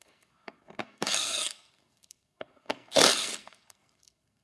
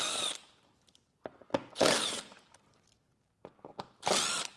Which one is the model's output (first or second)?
first